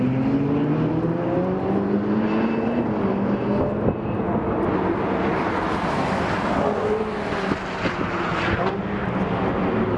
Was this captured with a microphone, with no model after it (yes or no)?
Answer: yes